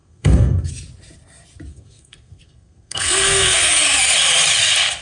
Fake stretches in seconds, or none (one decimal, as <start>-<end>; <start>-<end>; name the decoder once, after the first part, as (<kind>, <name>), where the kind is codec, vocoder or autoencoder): 0.0-0.7 (codec, SNAC); 1.7-3.7